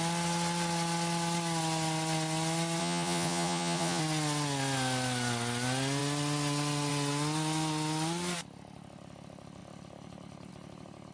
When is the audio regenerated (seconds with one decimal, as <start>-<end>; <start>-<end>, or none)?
2.8-4.0